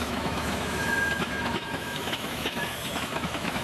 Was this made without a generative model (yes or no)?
no